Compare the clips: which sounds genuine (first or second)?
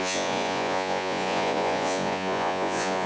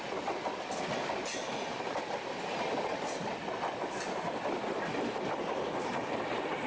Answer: second